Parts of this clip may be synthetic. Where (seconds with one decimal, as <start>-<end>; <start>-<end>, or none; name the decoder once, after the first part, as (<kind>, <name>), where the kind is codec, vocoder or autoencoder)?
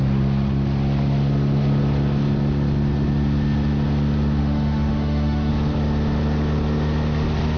4.4-5.5 (autoencoder, DAC-VAE)